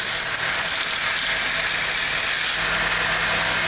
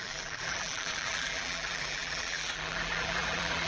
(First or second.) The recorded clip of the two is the first